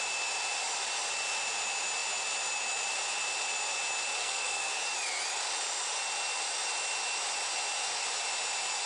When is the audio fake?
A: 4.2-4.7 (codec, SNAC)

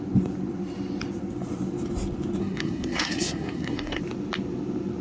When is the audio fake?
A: 2.4-4.0 (codec, SNAC)

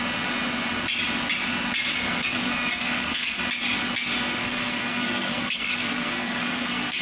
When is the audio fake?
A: 1.9-3.4 (codec, SNAC); 4.4-7.0

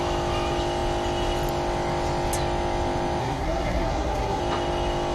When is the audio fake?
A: 3.2-4.4 (codec, SNAC)

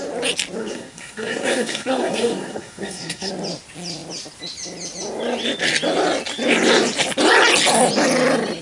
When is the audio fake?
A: 0.6-3.3 (codec, SNAC)

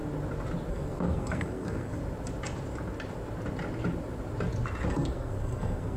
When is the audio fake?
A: 0.7-2.0 (codec, SNAC); 4.9-6.0

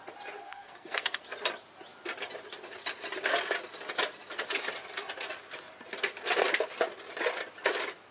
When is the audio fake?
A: 0.4-1.2 (codec, SNAC)

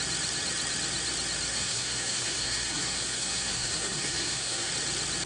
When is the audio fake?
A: 1.5-4.7 (codec, SNAC)